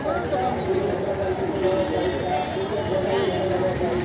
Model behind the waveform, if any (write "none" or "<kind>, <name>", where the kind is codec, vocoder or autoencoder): none